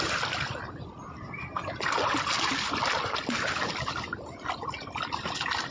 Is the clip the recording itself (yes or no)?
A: no